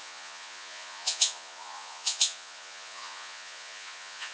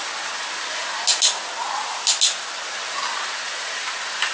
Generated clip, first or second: first